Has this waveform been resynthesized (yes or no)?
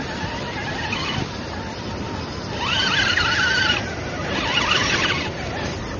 no